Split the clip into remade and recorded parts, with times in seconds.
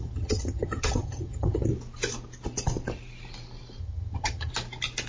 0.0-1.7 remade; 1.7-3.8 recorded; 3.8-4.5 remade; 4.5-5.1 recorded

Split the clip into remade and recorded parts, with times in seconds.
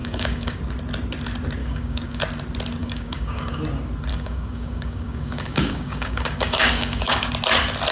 0.0-0.6 remade; 0.6-1.6 recorded; 1.6-2.2 remade; 2.2-2.8 recorded; 2.8-3.6 remade; 3.6-4.1 recorded; 4.1-7.3 remade; 7.3-7.9 recorded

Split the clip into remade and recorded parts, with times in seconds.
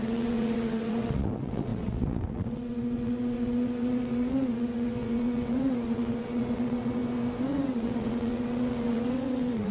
0.0-7.0 remade; 7.0-7.5 recorded; 7.5-9.7 remade